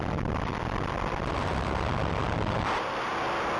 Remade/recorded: recorded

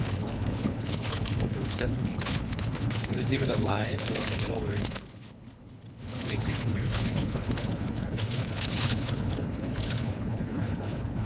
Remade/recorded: remade